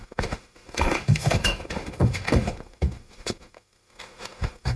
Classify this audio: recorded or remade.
remade